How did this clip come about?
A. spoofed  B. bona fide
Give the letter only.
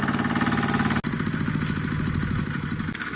B